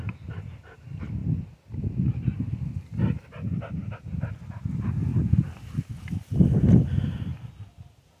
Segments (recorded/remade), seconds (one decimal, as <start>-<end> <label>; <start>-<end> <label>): 0.0-8.2 recorded